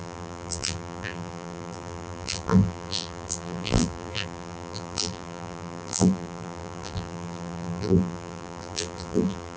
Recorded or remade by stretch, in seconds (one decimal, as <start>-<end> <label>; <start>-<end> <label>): 0.0-9.6 remade

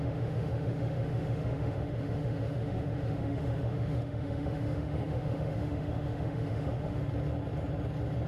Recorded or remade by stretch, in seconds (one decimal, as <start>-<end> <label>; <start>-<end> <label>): 0.0-7.0 remade; 7.0-8.3 recorded

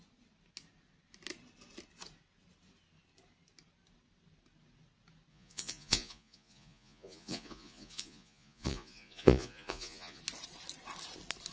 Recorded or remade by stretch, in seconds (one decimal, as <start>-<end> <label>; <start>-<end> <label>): 0.0-5.3 recorded; 5.3-10.2 remade; 10.2-11.5 recorded

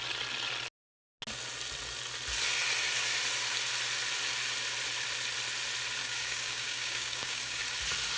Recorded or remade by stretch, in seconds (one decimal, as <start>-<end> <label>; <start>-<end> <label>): 0.0-6.0 recorded; 6.0-7.6 remade; 7.6-8.2 recorded

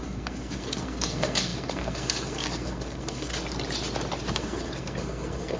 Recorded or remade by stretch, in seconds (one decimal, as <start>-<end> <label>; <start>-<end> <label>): 0.0-3.3 remade; 3.3-4.3 recorded; 4.3-5.6 remade